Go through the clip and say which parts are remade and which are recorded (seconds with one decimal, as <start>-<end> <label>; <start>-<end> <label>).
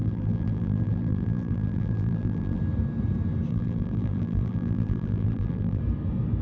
0.0-2.6 remade; 2.6-3.5 recorded; 3.5-5.8 remade; 5.8-6.4 recorded